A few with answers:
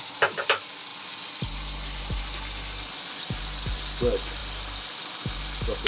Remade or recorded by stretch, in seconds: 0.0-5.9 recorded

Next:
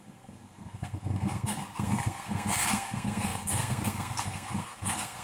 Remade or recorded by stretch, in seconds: 0.0-5.2 remade